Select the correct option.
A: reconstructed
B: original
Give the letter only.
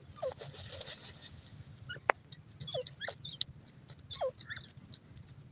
B